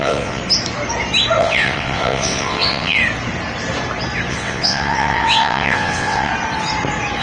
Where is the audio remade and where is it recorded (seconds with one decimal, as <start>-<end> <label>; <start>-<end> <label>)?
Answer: 0.0-0.4 remade; 0.4-1.4 recorded; 1.4-3.0 remade; 3.0-4.3 recorded; 4.3-6.3 remade; 6.3-7.2 recorded

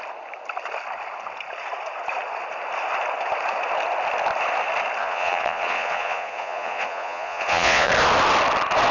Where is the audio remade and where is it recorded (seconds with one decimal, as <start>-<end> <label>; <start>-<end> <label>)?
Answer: 0.0-5.0 recorded; 5.0-7.9 remade; 7.9-8.9 recorded

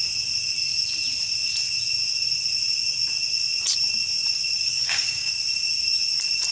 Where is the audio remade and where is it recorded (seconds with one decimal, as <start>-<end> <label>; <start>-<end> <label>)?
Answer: 0.0-4.6 recorded; 4.6-5.3 remade; 5.3-6.5 recorded